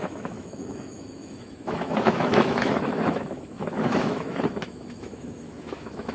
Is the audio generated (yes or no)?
yes